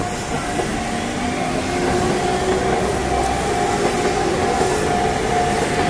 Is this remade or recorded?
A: recorded